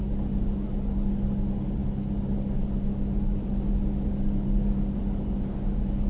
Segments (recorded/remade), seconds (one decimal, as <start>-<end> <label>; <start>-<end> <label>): 0.0-6.1 recorded